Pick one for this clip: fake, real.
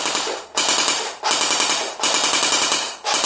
real